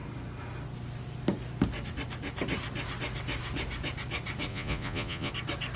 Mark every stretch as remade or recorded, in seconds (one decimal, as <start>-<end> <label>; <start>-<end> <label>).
0.0-4.5 recorded; 4.5-5.3 remade; 5.3-5.8 recorded